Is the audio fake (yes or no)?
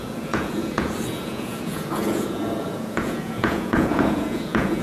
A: yes